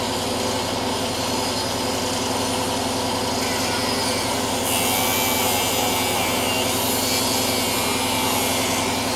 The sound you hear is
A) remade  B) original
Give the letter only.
B